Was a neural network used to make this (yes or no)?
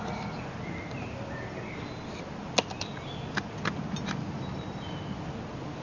no